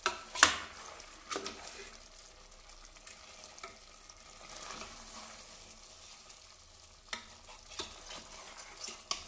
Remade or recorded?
recorded